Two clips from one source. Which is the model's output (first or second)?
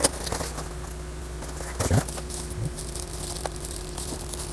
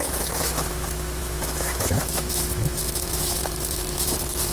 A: second